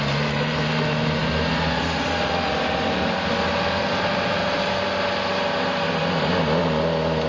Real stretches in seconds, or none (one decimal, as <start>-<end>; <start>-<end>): 0.0-7.3